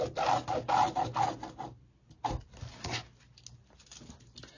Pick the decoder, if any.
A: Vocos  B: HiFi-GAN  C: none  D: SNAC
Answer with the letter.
C